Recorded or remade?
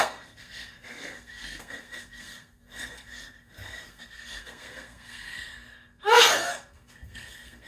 remade